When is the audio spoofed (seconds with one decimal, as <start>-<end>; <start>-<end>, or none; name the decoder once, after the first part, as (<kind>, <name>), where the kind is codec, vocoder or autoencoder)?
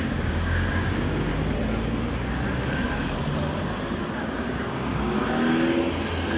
0.0-1.3 (codec, DAC); 4.2-5.2